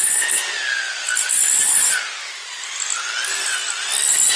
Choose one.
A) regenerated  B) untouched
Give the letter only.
B